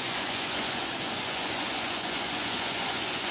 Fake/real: fake